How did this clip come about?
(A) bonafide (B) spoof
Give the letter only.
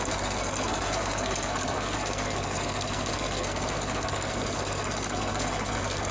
B